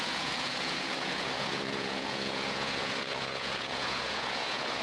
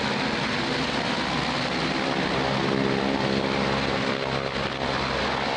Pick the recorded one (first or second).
second